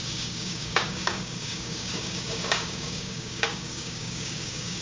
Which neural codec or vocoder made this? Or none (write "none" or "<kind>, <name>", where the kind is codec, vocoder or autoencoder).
codec, DAC